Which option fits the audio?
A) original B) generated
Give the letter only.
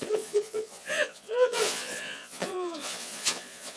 B